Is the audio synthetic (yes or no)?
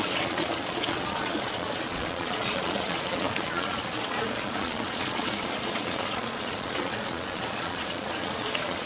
yes